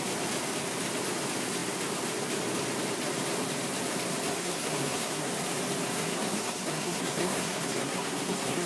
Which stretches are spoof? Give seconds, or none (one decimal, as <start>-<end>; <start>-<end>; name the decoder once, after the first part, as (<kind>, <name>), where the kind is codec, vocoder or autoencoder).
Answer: 4.4-5.3 (codec, SNAC); 5.9-8.7

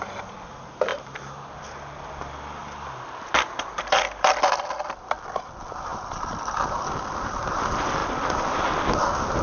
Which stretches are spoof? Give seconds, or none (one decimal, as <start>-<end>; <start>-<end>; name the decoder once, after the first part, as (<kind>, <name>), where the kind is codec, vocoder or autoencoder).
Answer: 2.6-4.4 (vocoder, BigVGAN v2); 5.9-6.8

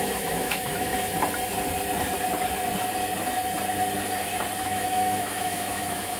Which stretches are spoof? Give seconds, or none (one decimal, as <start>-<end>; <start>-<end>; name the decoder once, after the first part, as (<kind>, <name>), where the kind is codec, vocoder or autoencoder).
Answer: 0.0-0.9 (autoencoder, DAC-VAE); 4.6-6.2